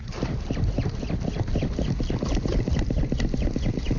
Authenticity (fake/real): real